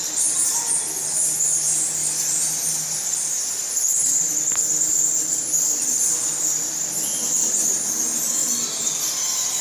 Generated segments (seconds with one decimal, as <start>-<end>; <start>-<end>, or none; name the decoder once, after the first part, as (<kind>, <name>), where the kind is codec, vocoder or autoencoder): 2.0-3.4 (vocoder, BigVGAN v2); 5.2-7.4